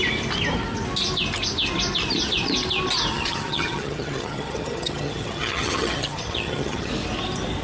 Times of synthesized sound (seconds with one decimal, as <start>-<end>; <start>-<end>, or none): 3.1-6.9